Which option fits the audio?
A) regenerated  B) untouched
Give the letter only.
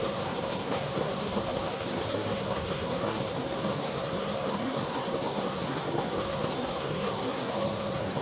A